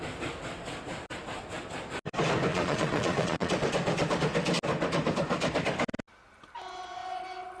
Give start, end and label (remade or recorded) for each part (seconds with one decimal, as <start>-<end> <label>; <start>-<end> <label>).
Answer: 0.0-2.5 recorded; 2.5-3.5 remade; 3.5-7.6 recorded